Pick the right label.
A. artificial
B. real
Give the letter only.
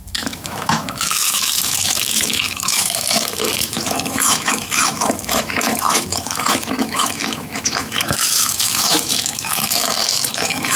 A